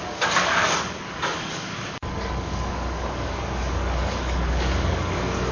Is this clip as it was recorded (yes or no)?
no